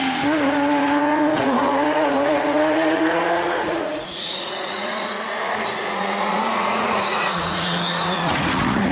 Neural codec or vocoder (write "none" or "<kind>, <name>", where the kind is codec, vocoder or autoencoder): vocoder, Vocos